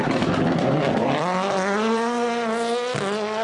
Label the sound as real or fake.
real